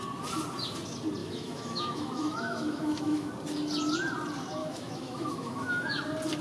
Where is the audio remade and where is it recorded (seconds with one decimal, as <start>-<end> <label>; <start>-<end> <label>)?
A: 0.0-1.2 recorded; 1.2-3.3 remade; 3.3-4.6 recorded; 4.6-6.0 remade; 6.0-6.4 recorded